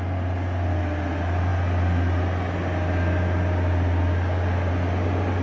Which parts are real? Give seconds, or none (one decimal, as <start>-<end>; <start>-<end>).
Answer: 0.0-5.4